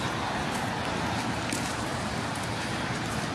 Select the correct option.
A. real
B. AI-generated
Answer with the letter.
A